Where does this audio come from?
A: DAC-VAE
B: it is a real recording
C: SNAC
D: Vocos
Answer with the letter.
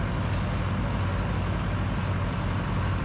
B